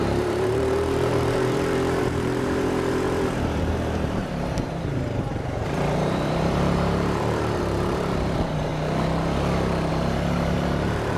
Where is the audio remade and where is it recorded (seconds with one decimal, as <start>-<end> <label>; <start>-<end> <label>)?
0.0-8.7 remade; 8.7-9.9 recorded; 9.9-11.2 remade

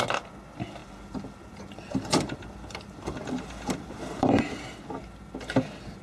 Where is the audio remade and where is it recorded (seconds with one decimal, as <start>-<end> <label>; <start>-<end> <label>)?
0.0-0.8 recorded; 0.8-4.4 remade; 4.4-6.0 recorded

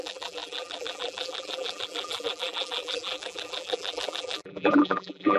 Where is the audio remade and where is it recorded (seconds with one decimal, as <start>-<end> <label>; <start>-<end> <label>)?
0.0-5.4 remade

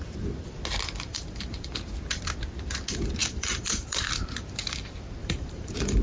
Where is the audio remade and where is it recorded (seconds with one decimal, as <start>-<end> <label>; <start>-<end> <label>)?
0.0-1.1 recorded; 1.1-1.7 remade; 1.7-3.2 recorded; 3.2-4.1 remade; 4.1-5.2 recorded; 5.2-6.0 remade

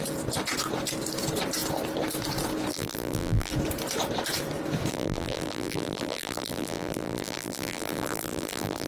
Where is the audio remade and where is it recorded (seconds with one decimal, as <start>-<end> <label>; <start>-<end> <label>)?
0.0-2.7 recorded; 2.7-3.5 remade; 3.5-4.9 recorded; 4.9-8.9 remade

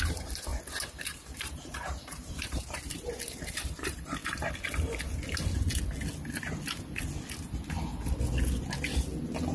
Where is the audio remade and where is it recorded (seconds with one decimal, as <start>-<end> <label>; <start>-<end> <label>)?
0.0-0.5 remade; 0.5-1.1 recorded; 1.1-4.2 remade; 4.2-9.5 recorded

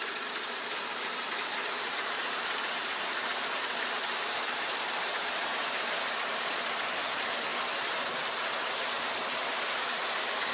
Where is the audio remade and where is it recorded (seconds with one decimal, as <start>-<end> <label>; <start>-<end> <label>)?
0.0-3.3 remade; 3.3-3.8 recorded; 3.8-7.5 remade; 7.5-8.7 recorded; 8.7-10.5 remade

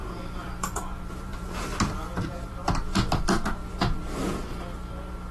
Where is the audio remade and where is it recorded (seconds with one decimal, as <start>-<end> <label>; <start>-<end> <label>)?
0.0-3.1 remade; 3.1-5.3 recorded